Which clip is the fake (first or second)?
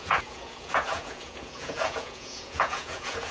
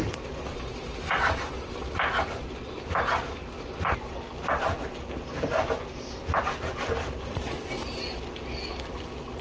first